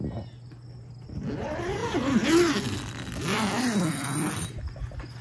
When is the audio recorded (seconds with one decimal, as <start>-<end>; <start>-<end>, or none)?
0.0-5.2